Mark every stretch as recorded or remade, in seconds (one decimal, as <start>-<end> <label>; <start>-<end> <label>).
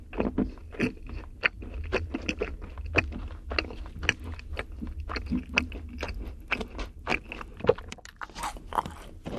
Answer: 0.0-0.6 recorded; 0.6-3.0 remade; 3.0-7.1 recorded; 7.1-7.8 remade; 7.8-9.4 recorded